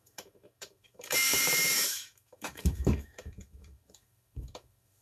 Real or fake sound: fake